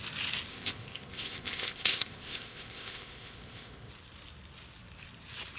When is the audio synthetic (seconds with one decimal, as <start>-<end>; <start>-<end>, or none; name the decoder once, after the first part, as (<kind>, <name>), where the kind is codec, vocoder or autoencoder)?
0.5-3.9 (codec, ZipCodec)